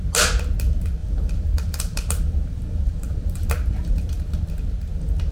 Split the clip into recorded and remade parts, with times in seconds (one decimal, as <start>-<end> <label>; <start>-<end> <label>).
0.0-1.0 recorded; 1.0-4.2 remade; 4.2-5.3 recorded